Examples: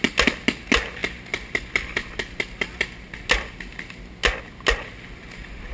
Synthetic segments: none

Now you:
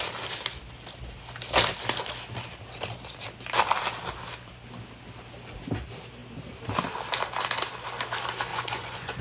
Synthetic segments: 8.5-9.2 (vocoder, Vocos)

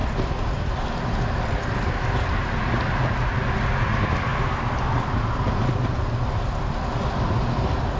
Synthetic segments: none